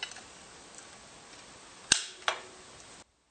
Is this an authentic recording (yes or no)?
yes